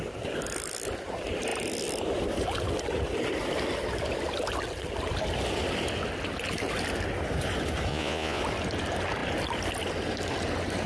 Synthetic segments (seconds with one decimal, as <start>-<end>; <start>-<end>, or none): 7.9-8.4